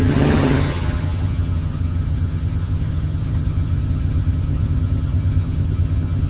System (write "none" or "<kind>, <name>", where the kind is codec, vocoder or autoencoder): vocoder, HiFi-GAN